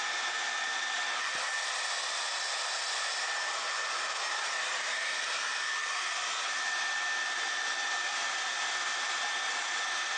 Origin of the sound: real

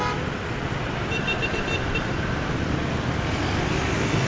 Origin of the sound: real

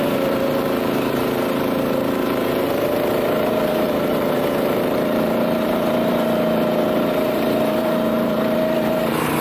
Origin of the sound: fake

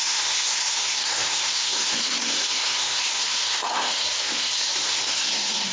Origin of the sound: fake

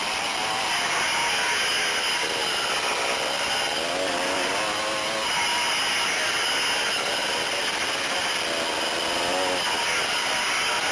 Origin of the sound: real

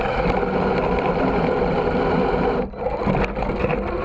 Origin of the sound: real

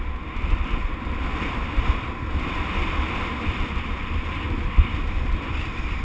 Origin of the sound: real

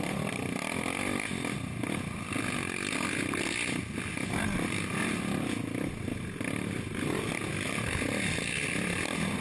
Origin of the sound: real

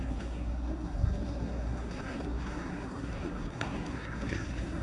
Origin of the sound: fake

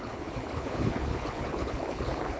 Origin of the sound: fake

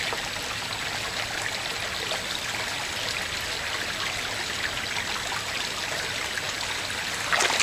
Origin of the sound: real